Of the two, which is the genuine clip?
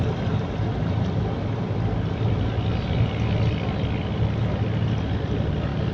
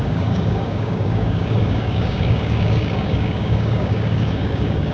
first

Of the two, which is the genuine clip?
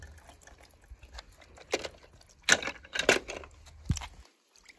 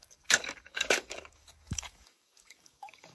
first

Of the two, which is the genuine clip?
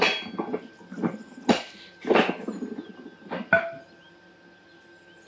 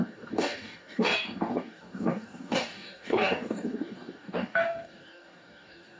first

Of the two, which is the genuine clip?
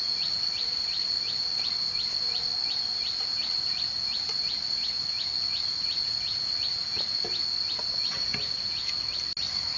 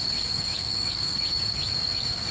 first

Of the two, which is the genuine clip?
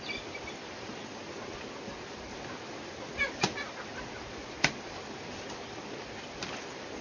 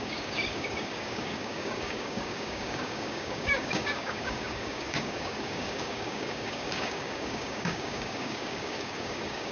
first